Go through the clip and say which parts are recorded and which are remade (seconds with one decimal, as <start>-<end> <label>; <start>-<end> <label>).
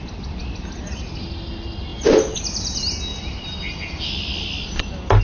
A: 0.0-5.2 recorded